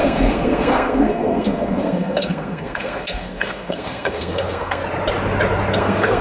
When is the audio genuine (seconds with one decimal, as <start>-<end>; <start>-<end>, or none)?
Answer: 4.8-5.8